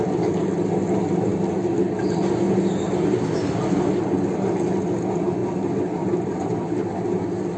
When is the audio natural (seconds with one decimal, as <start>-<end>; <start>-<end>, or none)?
0.0-7.6